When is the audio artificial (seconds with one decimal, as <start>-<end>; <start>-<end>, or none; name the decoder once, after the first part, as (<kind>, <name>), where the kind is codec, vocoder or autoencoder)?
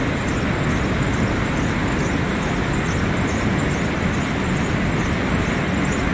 none